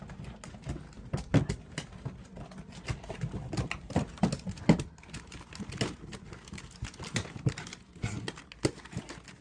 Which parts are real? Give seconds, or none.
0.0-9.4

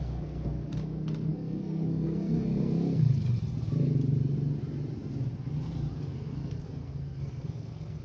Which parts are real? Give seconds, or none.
3.1-5.9